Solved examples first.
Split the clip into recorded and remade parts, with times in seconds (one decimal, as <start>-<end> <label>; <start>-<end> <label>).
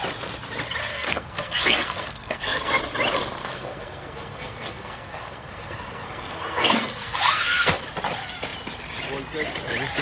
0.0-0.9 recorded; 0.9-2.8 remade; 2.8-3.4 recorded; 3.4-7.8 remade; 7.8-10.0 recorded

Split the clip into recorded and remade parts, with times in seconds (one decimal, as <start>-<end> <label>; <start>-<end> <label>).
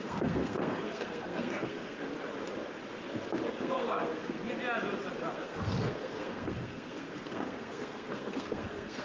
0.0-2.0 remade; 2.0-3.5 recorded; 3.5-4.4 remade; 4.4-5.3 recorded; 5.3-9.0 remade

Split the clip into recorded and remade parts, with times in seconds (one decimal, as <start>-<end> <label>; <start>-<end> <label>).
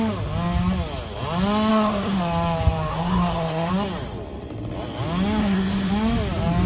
0.0-1.7 recorded; 1.7-2.2 remade; 2.2-2.9 recorded; 2.9-3.7 remade; 3.7-5.4 recorded; 5.4-5.9 remade; 5.9-6.7 recorded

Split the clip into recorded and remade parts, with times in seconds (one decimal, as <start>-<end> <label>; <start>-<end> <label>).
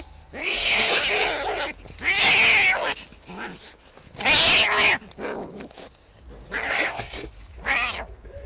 0.0-0.4 recorded; 0.4-1.0 remade; 1.0-6.7 recorded; 6.7-7.3 remade; 7.3-8.5 recorded